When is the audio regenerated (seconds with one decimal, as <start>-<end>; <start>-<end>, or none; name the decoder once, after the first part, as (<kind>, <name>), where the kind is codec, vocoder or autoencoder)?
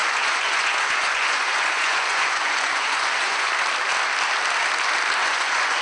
0.0-3.5 (vocoder, Vocos); 5.2-5.8